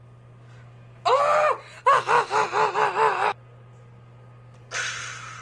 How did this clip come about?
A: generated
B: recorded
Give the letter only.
B